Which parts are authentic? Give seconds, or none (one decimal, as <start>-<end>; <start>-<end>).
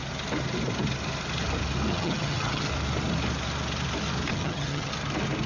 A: 0.0-1.9; 2.7-4.3; 4.9-5.5